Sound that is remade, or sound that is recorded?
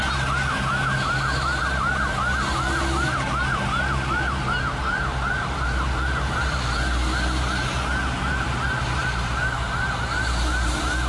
recorded